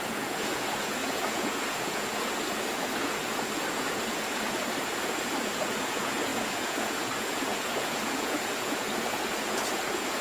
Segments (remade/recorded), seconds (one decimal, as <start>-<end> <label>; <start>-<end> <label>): 0.0-10.2 remade